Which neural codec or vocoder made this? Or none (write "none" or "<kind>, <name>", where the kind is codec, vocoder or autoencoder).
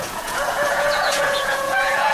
vocoder, Vocos